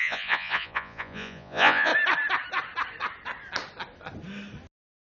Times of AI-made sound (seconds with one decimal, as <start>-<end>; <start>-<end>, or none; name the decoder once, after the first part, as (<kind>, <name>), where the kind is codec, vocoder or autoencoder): 0.0-1.9 (vocoder, Vocos)

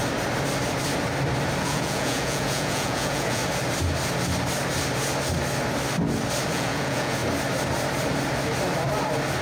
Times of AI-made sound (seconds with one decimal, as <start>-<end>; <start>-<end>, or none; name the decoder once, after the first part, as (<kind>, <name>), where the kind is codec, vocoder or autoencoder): 1.6-3.4 (vocoder, Vocos); 6.5-7.2

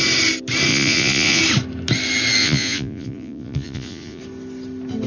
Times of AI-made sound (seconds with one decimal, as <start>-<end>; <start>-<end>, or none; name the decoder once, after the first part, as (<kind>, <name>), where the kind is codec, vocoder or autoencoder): 0.7-1.4 (vocoder, Vocos); 2.4-4.2

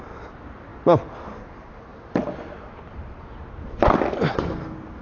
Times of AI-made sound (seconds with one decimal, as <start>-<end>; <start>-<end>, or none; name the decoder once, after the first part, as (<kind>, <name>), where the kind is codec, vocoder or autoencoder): none

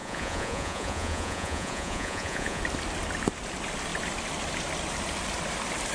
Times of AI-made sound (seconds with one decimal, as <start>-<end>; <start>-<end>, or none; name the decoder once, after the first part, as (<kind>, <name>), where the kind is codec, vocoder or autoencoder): 0.0-2.6 (vocoder, Vocos)

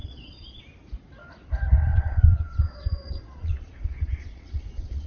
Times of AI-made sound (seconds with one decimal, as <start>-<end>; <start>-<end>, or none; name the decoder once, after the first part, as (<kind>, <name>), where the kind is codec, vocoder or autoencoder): 0.0-0.6 (vocoder, Vocos); 1.9-5.1

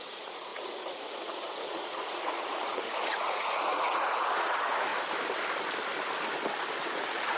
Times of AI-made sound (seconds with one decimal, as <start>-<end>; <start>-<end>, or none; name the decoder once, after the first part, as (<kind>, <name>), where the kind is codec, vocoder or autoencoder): 0.0-4.9 (vocoder, Vocos); 6.8-7.4